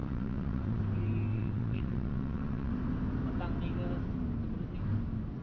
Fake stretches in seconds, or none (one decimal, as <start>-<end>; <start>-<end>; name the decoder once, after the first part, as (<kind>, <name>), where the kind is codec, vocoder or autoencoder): 0.0-0.8 (vocoder, WaveNeXt); 1.3-2.7